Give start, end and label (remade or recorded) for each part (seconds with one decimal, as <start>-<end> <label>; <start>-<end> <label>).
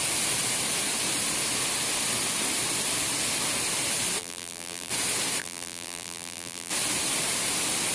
0.0-4.2 recorded; 4.2-4.9 remade; 4.9-5.4 recorded; 5.4-6.7 remade; 6.7-7.9 recorded